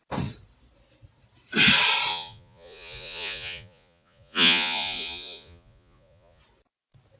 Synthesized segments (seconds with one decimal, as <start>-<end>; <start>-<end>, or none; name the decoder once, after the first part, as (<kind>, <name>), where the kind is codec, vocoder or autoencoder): 2.1-6.4 (vocoder, Vocos)